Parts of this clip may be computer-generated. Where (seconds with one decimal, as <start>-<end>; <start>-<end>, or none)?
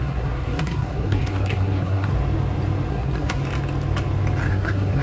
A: 0.0-2.1; 2.9-3.4; 4.5-5.0